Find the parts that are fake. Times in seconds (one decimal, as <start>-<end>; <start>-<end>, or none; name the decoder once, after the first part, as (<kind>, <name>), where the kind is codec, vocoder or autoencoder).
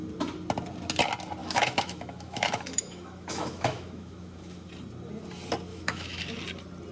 1.4-4.7 (autoencoder, DAC-VAE); 5.7-6.2